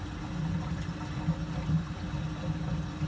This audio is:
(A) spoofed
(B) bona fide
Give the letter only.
B